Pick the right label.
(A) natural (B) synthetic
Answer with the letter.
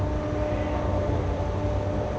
A